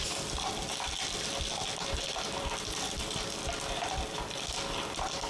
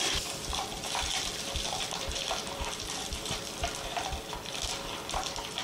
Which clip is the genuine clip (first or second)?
first